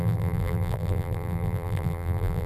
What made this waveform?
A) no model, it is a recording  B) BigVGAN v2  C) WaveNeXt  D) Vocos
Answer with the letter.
B